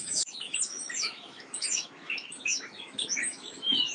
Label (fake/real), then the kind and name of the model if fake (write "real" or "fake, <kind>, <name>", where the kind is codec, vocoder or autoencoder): fake, autoencoder, DAC-VAE